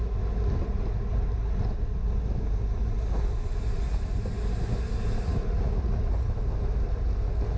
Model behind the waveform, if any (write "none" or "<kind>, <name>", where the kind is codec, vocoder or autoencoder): none